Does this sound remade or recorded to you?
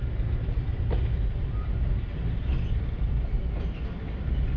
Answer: recorded